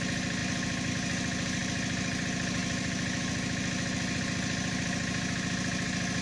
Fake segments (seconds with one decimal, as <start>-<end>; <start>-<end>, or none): none